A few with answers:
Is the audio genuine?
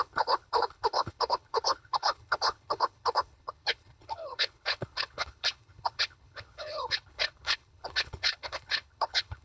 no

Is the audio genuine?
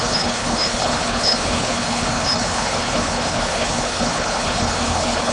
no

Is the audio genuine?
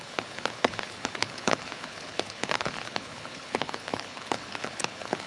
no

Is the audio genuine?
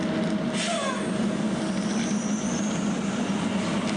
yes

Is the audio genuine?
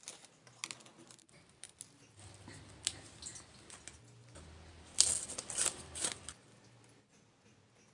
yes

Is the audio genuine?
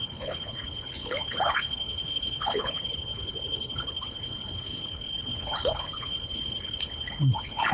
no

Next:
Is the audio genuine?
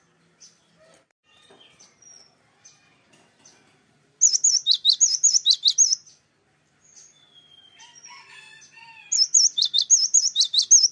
yes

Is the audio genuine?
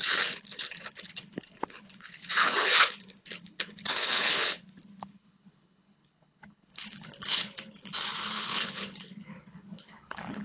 no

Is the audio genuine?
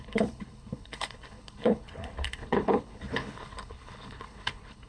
no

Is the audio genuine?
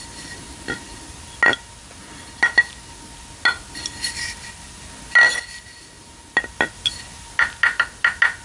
yes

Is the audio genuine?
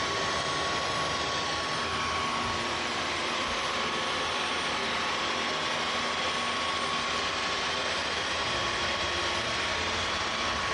yes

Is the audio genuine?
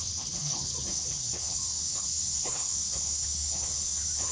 no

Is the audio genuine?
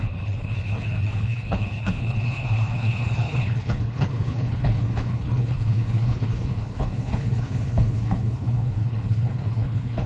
no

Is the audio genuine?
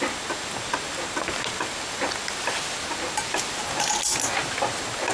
yes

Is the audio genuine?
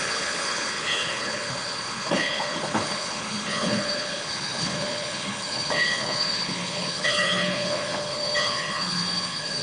no